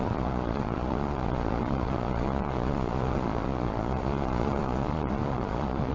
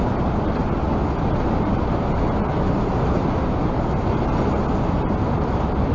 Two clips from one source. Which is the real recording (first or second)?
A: second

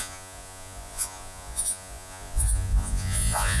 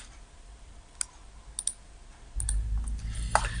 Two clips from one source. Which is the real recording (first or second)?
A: second